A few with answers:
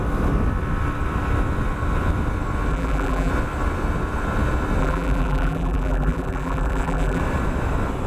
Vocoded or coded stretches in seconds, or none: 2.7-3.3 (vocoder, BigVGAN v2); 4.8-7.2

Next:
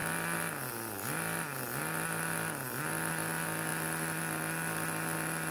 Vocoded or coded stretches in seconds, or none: none

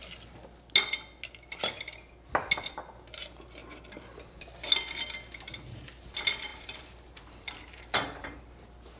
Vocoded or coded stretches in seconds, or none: 6.5-8.4 (vocoder, BigVGAN v2)

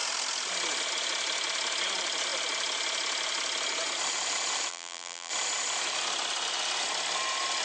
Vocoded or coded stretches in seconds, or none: 4.7-5.3 (vocoder, BigVGAN v2)

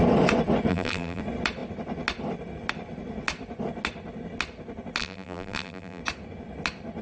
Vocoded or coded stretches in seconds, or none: 0.7-1.2 (vocoder, BigVGAN v2); 5.0-6.0

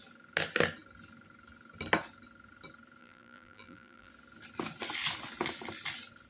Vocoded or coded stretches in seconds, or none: 3.0-4.1 (vocoder, BigVGAN v2)

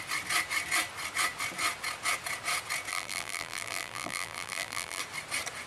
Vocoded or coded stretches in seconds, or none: 2.9-5.0 (vocoder, BigVGAN v2)